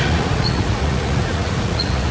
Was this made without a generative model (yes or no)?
no